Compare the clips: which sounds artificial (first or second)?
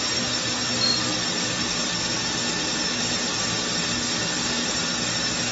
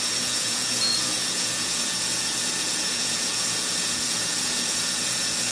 second